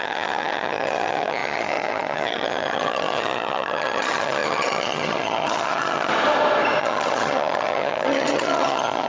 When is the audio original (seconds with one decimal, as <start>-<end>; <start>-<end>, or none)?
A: 6.1-6.8